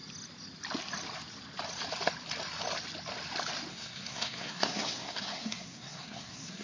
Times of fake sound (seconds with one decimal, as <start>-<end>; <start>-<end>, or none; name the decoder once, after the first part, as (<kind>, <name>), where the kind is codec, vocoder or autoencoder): 3.7-6.6 (codec, SNAC)